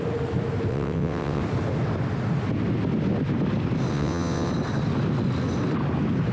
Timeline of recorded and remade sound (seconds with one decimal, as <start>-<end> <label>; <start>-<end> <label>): 0.0-0.7 recorded; 0.7-1.4 remade; 1.4-3.9 recorded; 3.9-4.5 remade; 4.5-6.3 recorded